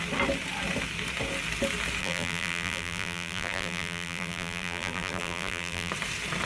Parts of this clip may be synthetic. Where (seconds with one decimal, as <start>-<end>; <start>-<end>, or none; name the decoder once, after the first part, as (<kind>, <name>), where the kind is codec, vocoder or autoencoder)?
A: 2.0-5.9 (vocoder, BigVGAN v2)